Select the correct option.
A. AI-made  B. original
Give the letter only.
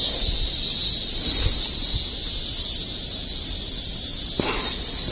B